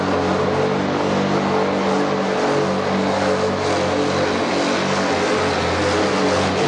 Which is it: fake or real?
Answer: real